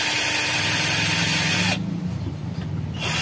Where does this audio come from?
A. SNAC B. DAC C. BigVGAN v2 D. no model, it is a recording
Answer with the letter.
D